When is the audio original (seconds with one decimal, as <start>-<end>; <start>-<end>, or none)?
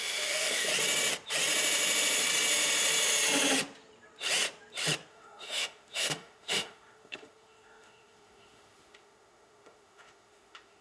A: 0.7-5.1